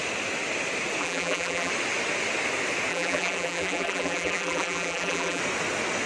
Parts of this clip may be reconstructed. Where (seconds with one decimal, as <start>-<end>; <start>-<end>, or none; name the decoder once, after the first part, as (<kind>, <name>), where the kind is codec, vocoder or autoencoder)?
1.0-1.7 (vocoder, BigVGAN v2); 2.9-5.4